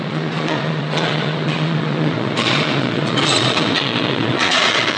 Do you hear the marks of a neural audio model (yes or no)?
yes